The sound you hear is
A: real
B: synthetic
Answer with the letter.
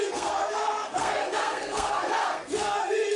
B